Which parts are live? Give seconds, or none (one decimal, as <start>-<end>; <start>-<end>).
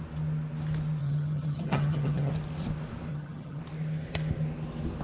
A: 0.0-1.0; 2.3-3.1; 3.6-5.0